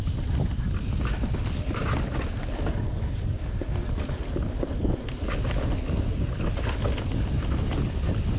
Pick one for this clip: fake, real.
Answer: real